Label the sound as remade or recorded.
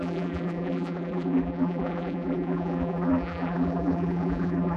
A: remade